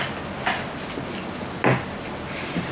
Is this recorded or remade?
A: recorded